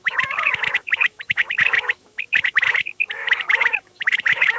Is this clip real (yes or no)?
no